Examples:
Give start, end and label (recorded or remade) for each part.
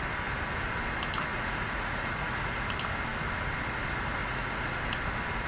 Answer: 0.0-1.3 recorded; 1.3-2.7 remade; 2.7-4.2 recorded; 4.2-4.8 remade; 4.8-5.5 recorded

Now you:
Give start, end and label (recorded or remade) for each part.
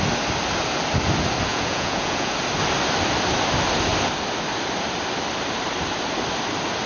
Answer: 0.0-1.5 recorded; 1.5-2.3 remade; 2.3-6.9 recorded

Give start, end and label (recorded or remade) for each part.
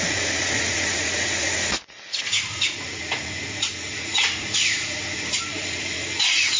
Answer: 0.0-6.6 remade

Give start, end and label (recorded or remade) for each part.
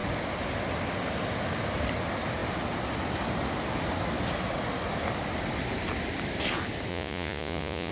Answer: 0.0-6.9 recorded; 6.9-7.9 remade